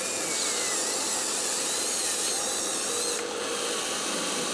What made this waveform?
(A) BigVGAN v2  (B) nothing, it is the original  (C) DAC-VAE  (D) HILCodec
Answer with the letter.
B